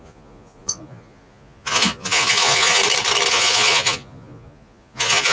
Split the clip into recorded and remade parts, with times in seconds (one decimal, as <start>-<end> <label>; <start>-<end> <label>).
0.0-2.8 remade; 2.8-3.3 recorded; 3.3-5.3 remade